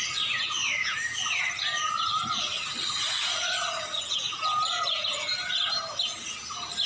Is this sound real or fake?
real